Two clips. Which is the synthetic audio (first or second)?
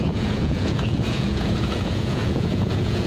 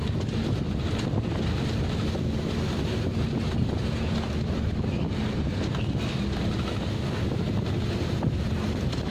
first